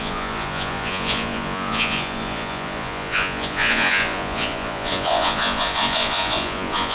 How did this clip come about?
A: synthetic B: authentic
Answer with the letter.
A